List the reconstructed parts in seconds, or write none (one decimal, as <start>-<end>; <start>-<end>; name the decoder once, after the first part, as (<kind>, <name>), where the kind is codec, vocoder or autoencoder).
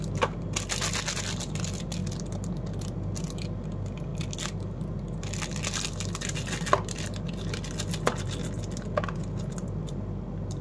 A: none